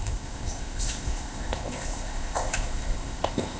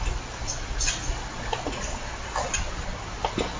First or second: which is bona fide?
second